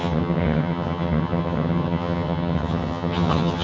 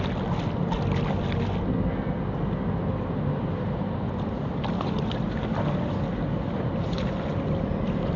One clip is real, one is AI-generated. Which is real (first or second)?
second